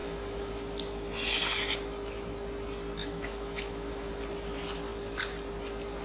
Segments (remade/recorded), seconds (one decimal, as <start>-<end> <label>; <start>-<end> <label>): 0.0-0.5 remade; 0.5-3.0 recorded; 3.0-4.1 remade; 4.1-6.0 recorded